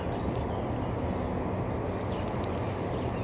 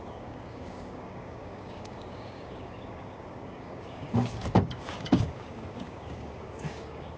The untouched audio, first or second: first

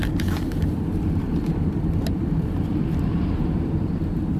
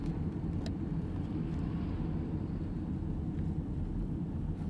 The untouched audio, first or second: second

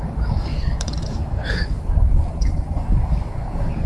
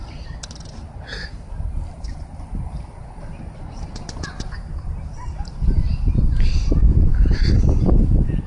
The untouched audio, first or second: second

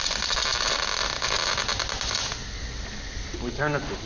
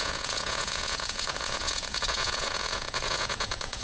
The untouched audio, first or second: first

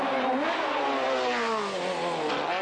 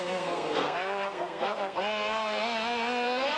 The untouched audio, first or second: first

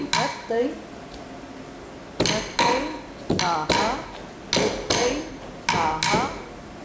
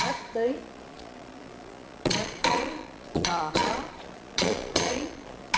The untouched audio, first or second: first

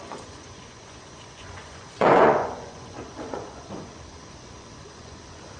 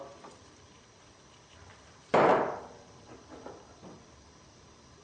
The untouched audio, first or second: second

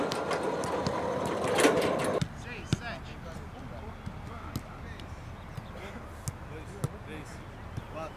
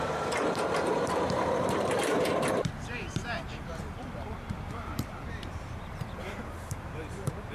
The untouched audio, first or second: first